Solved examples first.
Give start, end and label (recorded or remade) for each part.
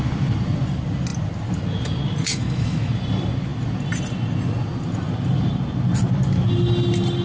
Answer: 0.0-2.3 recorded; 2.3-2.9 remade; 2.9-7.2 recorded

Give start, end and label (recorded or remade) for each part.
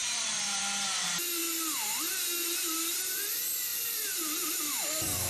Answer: 0.0-0.6 remade; 0.6-3.7 recorded; 3.7-5.3 remade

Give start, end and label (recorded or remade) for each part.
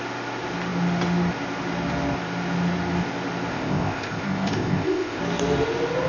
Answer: 0.0-3.5 recorded; 3.5-5.2 remade; 5.2-6.1 recorded